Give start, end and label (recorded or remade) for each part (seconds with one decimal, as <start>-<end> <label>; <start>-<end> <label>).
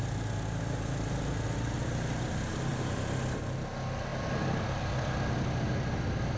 0.0-2.7 recorded; 2.7-3.4 remade; 3.4-6.4 recorded